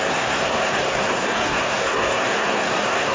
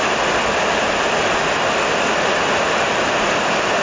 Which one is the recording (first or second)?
second